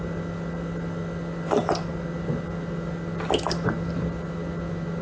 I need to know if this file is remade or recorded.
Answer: recorded